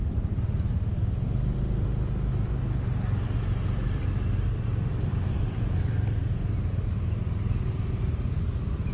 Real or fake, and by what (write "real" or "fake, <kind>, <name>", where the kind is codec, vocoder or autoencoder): real